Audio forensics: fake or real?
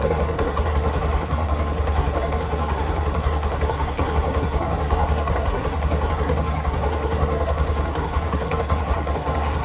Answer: fake